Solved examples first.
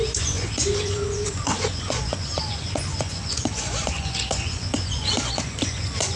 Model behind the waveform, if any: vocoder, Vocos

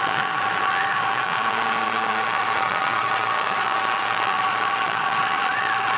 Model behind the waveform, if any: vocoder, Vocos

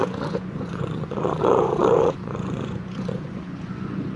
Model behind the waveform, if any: vocoder, Vocos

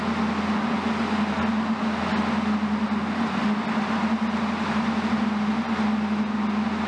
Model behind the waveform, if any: none